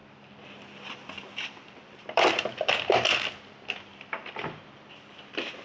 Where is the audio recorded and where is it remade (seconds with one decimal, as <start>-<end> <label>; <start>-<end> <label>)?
0.0-5.6 remade